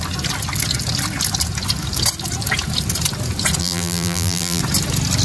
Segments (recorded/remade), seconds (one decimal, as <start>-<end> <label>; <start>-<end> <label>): 0.0-3.6 recorded; 3.6-4.6 remade; 4.6-5.2 recorded